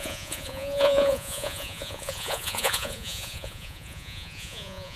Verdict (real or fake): fake